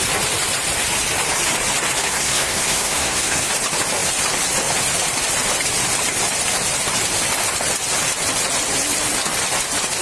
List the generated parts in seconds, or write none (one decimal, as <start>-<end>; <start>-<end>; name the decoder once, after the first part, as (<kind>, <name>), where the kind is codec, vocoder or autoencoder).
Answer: 2.0-3.5 (codec, SNAC)